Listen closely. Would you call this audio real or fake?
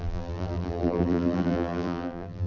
fake